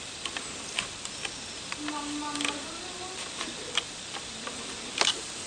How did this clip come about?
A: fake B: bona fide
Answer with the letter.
B